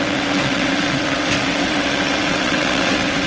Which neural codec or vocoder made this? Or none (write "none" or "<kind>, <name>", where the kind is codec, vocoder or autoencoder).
vocoder, WaveNeXt